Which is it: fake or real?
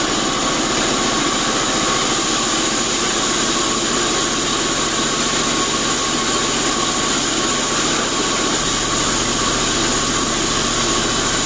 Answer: real